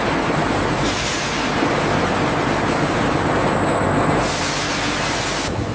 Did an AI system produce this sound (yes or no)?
no